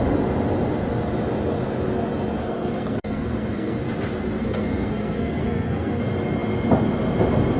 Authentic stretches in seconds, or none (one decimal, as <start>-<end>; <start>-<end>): 0.0-2.4; 3.9-4.4; 6.0-7.6